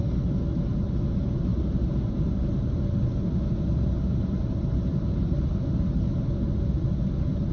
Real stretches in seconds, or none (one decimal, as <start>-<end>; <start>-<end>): 0.0-7.5